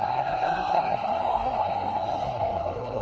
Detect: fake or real fake